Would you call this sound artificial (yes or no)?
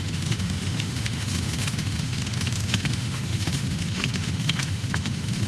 yes